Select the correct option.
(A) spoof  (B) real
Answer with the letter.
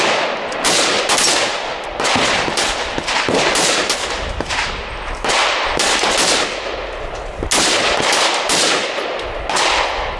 B